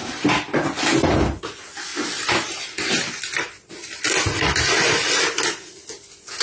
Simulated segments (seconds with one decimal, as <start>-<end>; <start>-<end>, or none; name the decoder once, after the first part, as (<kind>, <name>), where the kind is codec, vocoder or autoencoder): none